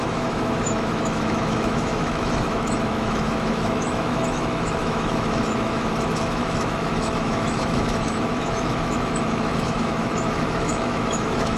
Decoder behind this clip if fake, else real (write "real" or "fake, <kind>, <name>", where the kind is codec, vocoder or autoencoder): fake, autoencoder, DAC-VAE